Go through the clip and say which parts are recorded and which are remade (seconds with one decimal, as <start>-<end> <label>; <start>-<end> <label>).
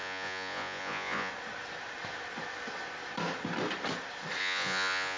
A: 0.0-1.3 remade; 1.3-4.4 recorded; 4.4-5.2 remade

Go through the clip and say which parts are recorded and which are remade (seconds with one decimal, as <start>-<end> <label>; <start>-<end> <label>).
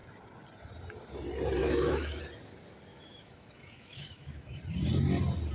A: 0.0-1.6 recorded; 1.6-2.2 remade; 2.2-2.9 recorded; 2.9-4.6 remade; 4.6-5.5 recorded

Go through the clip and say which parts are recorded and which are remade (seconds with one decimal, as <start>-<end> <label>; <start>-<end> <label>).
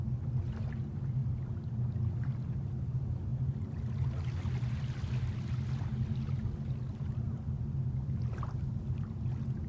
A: 0.0-9.7 recorded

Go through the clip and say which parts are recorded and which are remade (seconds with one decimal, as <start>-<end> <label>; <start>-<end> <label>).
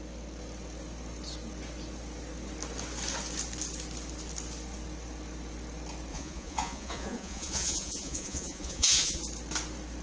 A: 0.0-6.1 recorded; 6.1-9.2 remade; 9.2-10.0 recorded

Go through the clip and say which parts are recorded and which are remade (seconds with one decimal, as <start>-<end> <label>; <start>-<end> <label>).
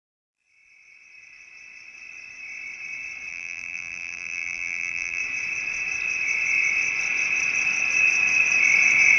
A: 0.0-3.3 recorded; 3.3-5.2 remade; 5.2-9.2 recorded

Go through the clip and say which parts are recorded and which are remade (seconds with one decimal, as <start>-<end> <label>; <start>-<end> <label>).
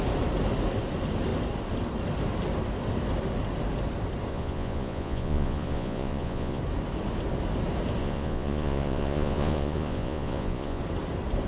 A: 0.0-4.3 recorded; 4.3-6.6 remade; 6.6-8.0 recorded; 8.0-10.8 remade; 10.8-11.5 recorded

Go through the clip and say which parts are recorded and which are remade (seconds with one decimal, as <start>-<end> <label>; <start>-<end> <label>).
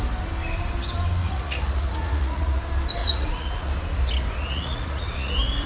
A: 0.0-1.2 recorded; 1.2-2.6 remade; 2.6-3.0 recorded; 3.0-3.7 remade; 3.7-4.4 recorded; 4.4-5.3 remade; 5.3-5.7 recorded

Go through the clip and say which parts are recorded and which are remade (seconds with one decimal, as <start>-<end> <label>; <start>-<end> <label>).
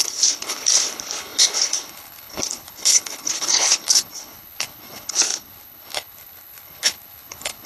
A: 0.0-7.7 remade